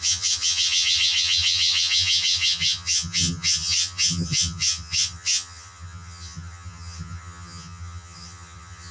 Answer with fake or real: fake